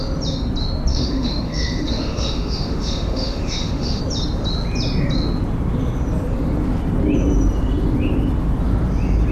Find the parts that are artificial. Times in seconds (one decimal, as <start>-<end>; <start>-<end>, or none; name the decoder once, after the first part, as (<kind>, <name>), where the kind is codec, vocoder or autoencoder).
0.9-4.0 (autoencoder, DAC-VAE)